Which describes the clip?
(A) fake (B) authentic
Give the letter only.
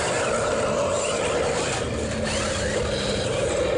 B